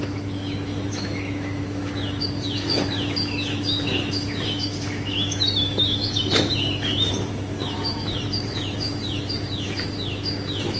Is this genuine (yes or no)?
no